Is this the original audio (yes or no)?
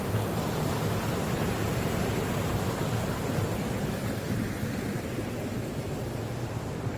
yes